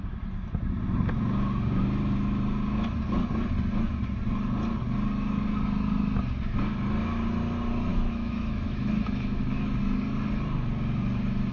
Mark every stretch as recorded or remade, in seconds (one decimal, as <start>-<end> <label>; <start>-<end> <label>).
0.0-7.9 recorded; 7.9-9.8 remade; 9.8-11.5 recorded